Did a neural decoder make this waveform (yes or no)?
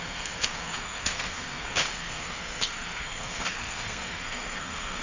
yes